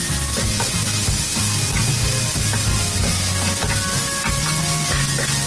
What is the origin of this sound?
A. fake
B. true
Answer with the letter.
B